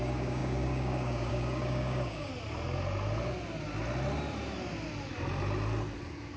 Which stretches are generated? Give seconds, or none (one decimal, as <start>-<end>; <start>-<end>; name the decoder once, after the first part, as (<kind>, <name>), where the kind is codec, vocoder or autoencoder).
0.0-2.3 (codec, DAC)